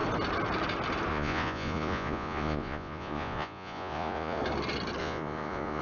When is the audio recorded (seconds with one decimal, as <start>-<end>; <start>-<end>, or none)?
0.0-1.1; 4.4-5.0